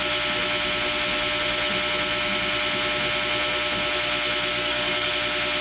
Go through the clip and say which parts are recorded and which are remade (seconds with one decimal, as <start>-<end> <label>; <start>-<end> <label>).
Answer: 0.0-4.5 recorded; 4.5-5.1 remade; 5.1-5.6 recorded